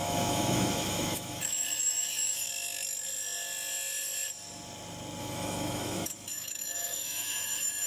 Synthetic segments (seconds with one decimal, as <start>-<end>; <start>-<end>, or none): 0.0-2.5; 5.2-7.9